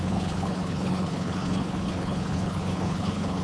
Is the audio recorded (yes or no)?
no